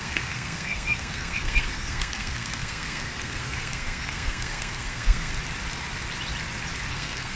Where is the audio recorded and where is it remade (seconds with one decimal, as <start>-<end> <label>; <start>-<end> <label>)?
0.0-5.3 remade; 5.3-6.9 recorded; 6.9-7.4 remade